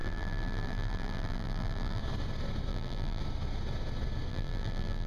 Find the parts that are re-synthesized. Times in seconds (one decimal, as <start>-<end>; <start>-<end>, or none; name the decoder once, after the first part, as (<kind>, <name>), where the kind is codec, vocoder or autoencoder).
0.0-2.0 (vocoder, BigVGAN v2); 2.7-3.2; 4.3-5.1